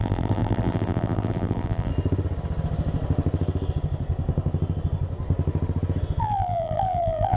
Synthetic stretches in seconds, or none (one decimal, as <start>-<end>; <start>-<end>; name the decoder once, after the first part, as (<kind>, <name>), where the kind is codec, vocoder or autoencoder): 0.0-1.9 (vocoder, BigVGAN v2); 6.2-7.4